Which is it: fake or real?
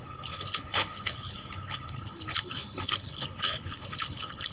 fake